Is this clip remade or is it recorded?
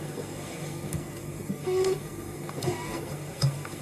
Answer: remade